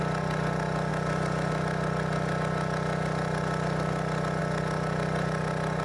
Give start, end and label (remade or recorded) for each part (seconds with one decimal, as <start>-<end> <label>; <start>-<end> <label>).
0.0-5.8 recorded